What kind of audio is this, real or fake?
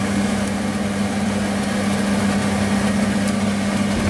real